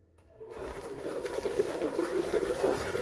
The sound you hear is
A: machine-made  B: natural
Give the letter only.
A